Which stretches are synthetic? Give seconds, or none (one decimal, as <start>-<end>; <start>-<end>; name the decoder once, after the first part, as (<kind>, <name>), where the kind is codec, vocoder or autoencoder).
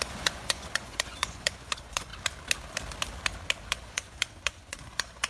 0.0-2.1 (vocoder, Vocos); 3.7-5.3